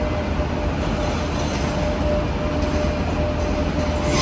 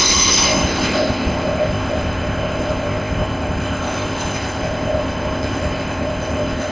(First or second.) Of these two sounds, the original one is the first